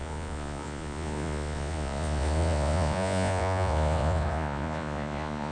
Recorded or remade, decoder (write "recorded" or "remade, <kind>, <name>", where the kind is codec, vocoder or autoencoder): remade, vocoder, Vocos